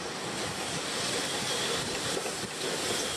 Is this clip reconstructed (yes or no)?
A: no